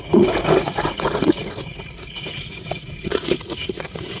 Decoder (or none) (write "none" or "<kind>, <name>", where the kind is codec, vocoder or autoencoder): vocoder, Vocos